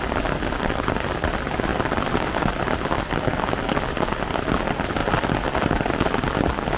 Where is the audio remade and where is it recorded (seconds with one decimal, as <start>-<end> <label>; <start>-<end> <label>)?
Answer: 0.0-6.8 recorded